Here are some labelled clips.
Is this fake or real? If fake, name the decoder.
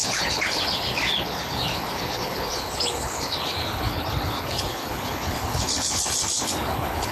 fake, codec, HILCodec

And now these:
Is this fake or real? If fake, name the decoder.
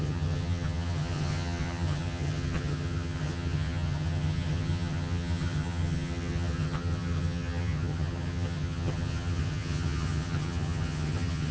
fake, vocoder, HiFi-GAN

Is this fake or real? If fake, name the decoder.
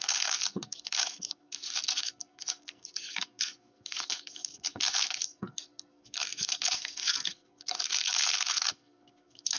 fake, codec, SNAC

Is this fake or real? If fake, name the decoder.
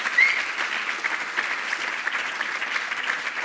real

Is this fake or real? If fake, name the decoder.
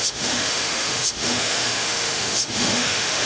fake, autoencoder, DAC-VAE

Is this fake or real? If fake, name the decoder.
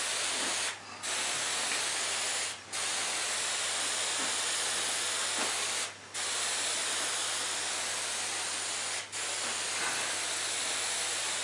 real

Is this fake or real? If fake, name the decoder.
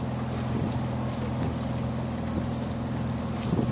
real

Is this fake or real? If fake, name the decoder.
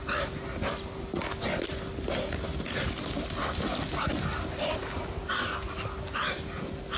real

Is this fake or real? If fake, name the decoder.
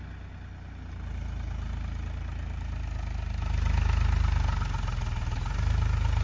real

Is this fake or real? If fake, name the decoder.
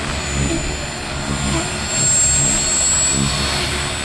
real